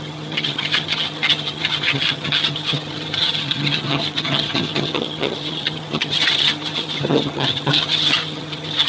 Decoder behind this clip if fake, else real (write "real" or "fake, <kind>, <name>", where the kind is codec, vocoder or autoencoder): fake, vocoder, HiFi-GAN